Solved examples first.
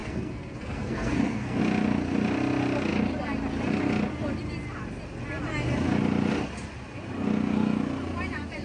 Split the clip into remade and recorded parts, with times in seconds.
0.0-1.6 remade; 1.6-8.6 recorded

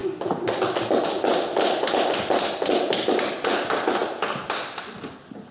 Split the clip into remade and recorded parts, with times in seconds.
0.0-5.5 recorded

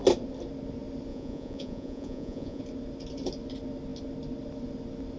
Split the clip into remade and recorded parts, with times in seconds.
0.0-1.1 recorded; 1.1-2.6 remade; 2.6-5.2 recorded

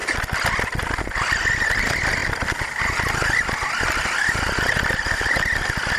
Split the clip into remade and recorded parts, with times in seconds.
0.0-6.0 recorded

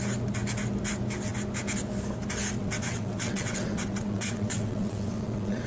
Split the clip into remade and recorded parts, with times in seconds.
0.0-2.6 recorded; 2.6-5.7 remade